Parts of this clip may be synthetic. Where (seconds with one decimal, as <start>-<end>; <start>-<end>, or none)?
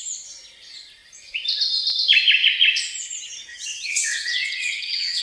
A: 3.5-5.2